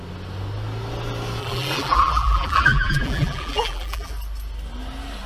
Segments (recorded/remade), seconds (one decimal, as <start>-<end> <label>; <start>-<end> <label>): 0.0-1.4 recorded; 1.4-4.1 remade; 4.1-5.3 recorded